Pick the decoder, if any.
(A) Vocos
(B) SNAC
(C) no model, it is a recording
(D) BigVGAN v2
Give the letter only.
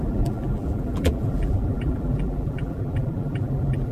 D